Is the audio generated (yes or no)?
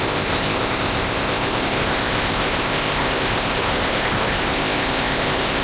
yes